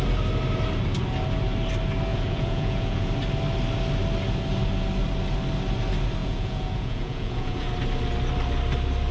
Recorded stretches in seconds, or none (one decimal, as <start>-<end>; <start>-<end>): 0.0-2.1; 3.1-6.2; 7.7-9.1